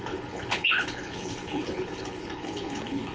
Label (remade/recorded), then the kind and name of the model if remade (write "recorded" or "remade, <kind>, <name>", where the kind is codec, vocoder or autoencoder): remade, codec, HILCodec